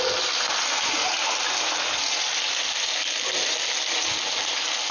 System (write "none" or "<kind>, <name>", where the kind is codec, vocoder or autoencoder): none